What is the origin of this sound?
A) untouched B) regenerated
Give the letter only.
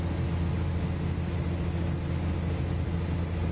A